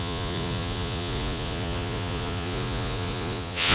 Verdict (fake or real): fake